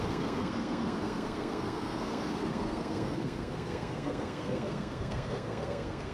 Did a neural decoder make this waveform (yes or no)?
yes